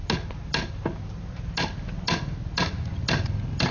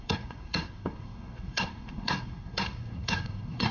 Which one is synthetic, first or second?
second